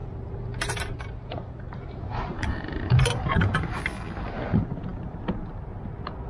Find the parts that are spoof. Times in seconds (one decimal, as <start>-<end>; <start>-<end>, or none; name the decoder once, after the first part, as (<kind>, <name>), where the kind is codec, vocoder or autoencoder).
0.0-3.8 (vocoder, BigVGAN v2)

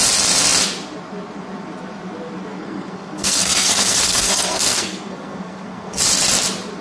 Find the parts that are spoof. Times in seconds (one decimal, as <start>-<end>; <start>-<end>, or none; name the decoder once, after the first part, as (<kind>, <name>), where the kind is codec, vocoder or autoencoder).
2.5-6.0 (codec, SNAC)

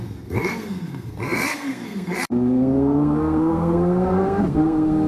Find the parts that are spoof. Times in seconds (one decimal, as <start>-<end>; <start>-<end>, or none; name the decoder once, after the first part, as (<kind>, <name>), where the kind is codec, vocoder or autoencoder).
0.0-5.1 (codec, SNAC)

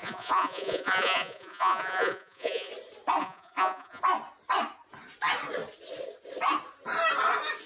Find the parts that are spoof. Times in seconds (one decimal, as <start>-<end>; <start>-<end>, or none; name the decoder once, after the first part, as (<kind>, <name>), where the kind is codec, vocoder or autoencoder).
0.0-2.7 (vocoder, Vocos); 3.2-4.0

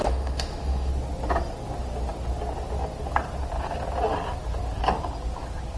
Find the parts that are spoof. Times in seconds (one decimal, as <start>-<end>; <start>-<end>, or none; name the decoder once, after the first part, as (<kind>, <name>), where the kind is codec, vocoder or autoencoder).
0.0-0.9 (autoencoder, DAC-VAE)